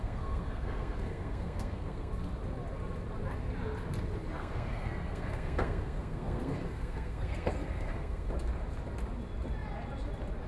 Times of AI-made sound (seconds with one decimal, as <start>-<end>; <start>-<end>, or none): 0.0-2.1; 4.4-8.3